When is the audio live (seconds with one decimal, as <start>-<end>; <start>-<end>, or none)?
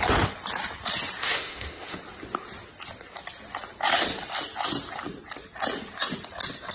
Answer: 0.0-1.2; 2.0-6.7